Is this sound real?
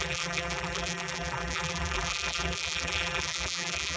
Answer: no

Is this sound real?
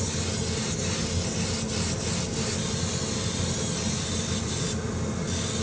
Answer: yes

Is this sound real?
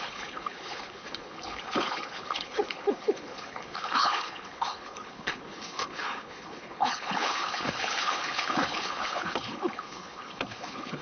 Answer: no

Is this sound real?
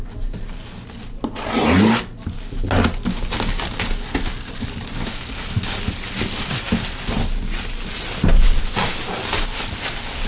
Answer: yes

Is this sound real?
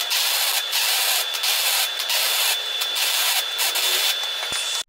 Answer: yes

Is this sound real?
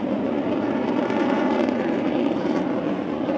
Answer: no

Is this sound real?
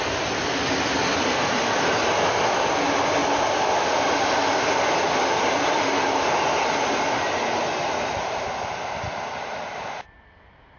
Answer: yes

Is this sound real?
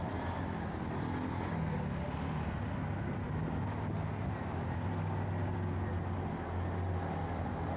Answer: yes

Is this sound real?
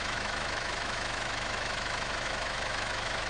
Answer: no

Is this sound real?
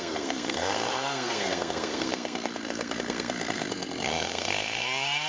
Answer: no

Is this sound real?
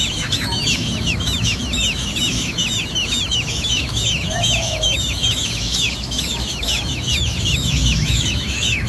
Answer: no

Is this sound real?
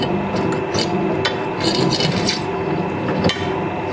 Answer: yes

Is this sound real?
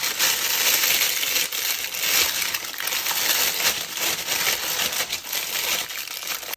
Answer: yes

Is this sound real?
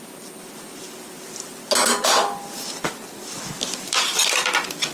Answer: yes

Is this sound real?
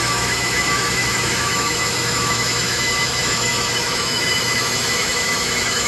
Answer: no